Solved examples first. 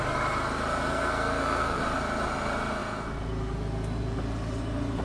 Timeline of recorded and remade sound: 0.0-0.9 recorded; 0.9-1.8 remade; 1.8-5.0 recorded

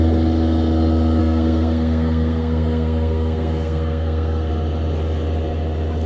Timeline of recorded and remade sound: 0.0-1.2 recorded; 1.2-4.5 remade; 4.5-6.1 recorded

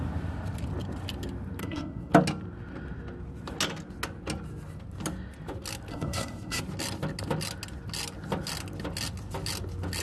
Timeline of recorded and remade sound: 0.0-1.6 recorded; 1.6-2.1 remade; 2.1-5.9 recorded; 5.9-6.6 remade; 6.6-10.0 recorded